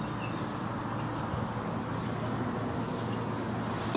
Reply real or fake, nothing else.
real